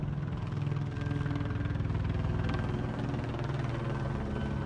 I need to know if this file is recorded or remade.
recorded